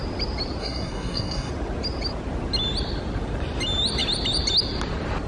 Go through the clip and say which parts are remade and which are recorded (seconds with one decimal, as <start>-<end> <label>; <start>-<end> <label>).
0.0-0.6 recorded; 0.6-1.5 remade; 1.5-5.3 recorded